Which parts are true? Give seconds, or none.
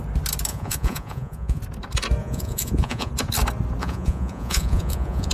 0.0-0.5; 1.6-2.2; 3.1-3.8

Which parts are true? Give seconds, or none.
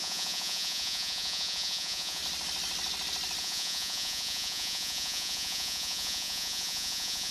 2.2-3.4